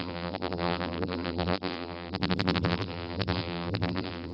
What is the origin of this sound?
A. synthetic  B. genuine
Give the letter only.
A